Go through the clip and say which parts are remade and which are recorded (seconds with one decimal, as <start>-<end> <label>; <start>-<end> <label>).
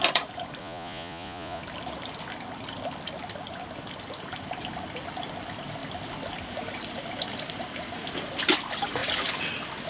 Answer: 0.0-0.6 recorded; 0.6-1.6 remade; 1.6-9.9 recorded